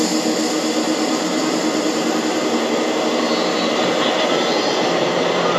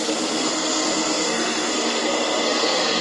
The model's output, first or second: second